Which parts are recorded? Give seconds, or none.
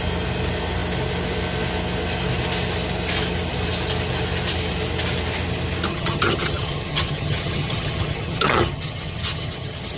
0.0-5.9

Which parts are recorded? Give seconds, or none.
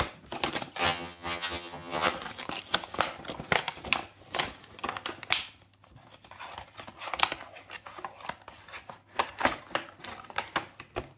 0.0-0.8; 2.1-11.2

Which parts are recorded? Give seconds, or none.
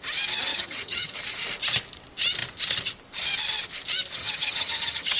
0.0-0.5; 1.2-4.2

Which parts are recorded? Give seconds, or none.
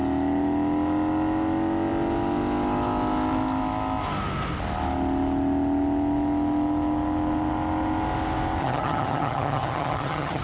0.0-8.6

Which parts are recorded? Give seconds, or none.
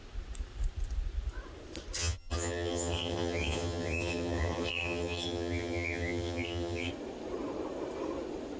0.0-2.0; 6.9-8.6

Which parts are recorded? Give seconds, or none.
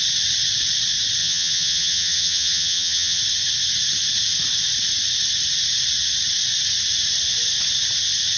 0.0-1.2; 3.2-8.4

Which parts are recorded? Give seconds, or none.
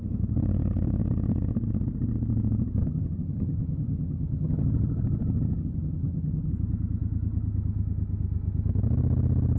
0.0-2.8; 6.5-9.6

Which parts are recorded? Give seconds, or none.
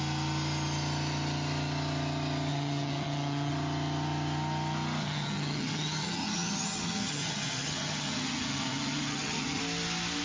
0.0-2.5; 3.5-5.0; 9.6-10.2